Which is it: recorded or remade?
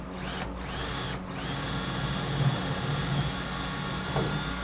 recorded